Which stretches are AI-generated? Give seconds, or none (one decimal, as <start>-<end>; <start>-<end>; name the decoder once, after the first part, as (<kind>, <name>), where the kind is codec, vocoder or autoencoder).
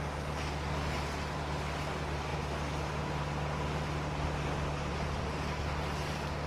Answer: none